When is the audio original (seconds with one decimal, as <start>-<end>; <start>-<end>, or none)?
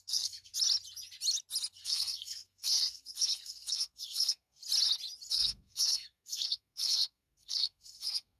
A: 0.5-1.7; 4.6-5.3